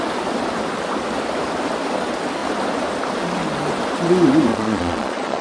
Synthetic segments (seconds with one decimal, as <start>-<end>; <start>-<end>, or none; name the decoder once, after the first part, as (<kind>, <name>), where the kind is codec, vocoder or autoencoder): 4.5-5.4 (vocoder, Vocos)